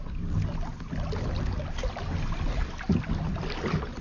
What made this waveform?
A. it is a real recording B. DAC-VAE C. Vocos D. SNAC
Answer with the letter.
A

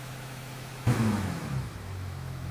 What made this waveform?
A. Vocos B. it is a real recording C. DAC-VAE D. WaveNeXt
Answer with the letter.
C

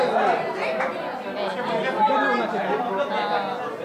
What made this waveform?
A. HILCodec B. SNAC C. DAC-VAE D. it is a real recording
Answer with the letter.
D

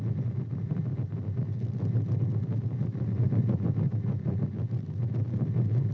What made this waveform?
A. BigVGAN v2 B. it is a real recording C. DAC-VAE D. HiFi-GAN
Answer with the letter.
B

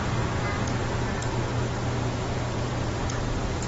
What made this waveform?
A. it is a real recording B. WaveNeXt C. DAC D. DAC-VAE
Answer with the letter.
A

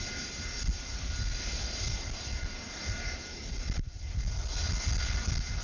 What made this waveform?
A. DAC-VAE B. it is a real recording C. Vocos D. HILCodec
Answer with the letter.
B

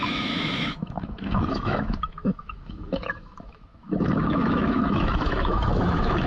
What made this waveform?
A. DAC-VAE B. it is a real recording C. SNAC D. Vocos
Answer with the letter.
A